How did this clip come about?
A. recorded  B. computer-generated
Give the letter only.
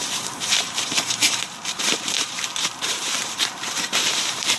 B